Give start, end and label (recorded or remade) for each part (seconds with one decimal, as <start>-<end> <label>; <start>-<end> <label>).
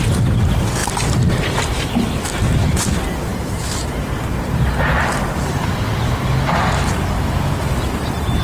0.0-3.3 recorded; 3.3-4.4 remade; 4.4-8.4 recorded